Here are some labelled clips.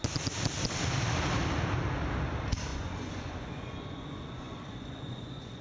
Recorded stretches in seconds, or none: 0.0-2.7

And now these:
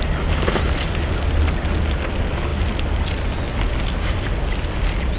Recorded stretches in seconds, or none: 0.0-5.2

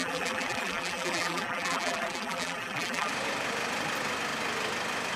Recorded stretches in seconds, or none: 3.1-5.2

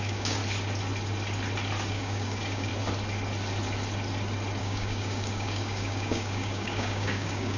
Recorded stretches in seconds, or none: 0.4-1.9; 2.7-4.6

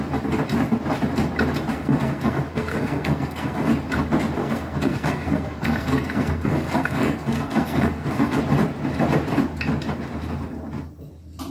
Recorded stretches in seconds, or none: 0.0-1.7; 3.7-4.4; 8.4-11.5

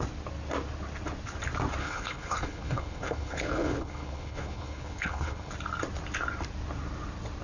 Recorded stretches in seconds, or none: 0.0-1.8; 5.5-7.4

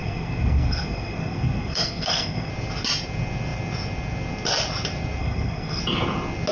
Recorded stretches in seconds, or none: 2.5-5.2; 5.8-6.5